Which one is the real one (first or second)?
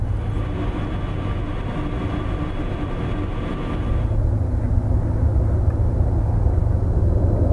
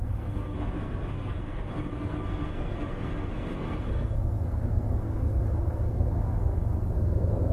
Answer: first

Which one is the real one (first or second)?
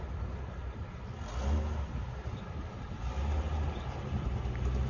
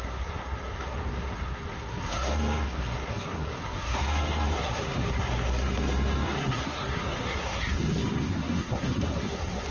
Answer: first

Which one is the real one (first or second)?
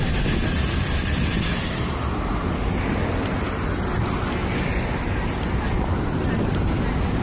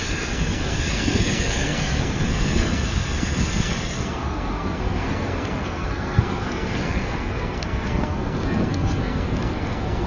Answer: first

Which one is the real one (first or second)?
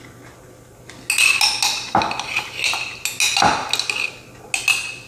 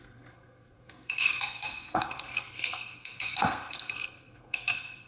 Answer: first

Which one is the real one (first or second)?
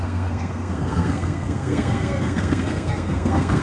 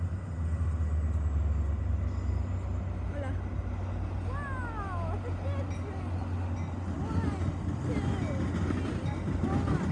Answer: second